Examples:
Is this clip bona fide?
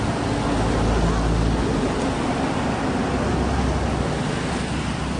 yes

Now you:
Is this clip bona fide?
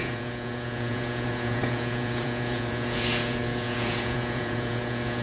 no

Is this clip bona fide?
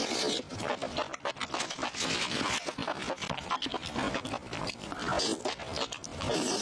yes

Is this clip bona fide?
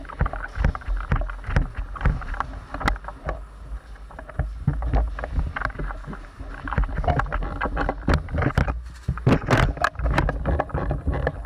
yes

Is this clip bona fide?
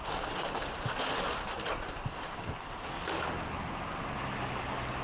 yes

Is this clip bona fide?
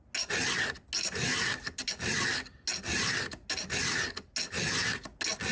yes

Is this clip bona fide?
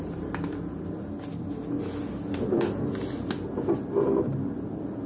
yes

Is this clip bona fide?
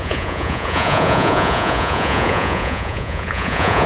no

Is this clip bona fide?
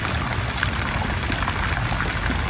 yes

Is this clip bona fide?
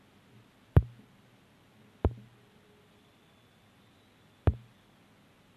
yes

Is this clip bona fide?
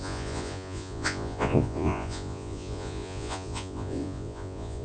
no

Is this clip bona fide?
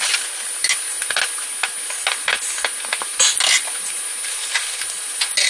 yes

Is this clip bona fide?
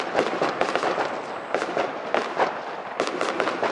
yes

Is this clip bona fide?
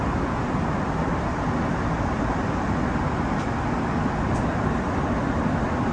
yes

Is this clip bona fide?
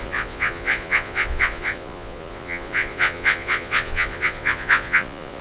no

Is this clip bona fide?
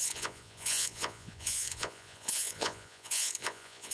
no